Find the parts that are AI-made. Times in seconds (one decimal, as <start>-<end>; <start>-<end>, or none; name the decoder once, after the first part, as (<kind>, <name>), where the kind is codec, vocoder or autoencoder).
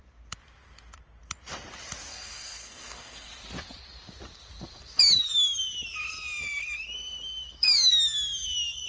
2.1-3.3 (codec, SNAC)